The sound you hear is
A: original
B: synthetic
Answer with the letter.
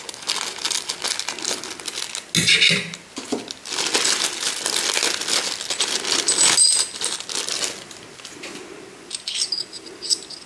A